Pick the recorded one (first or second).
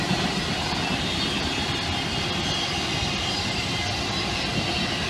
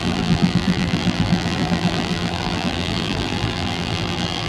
first